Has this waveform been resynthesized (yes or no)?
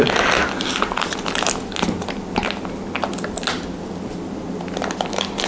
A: no